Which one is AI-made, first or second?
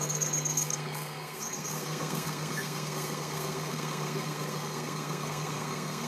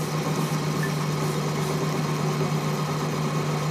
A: first